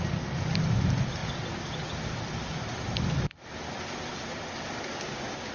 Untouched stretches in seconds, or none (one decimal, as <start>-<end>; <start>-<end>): 0.0-4.9